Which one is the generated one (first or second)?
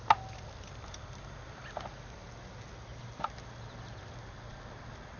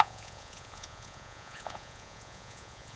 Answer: second